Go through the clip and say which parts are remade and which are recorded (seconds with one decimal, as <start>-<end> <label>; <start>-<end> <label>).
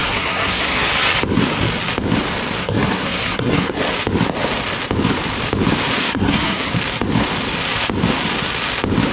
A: 0.0-0.9 remade; 0.9-2.6 recorded; 2.6-3.8 remade; 3.8-6.0 recorded; 6.0-6.7 remade; 6.7-9.1 recorded